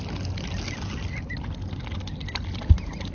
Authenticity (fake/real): real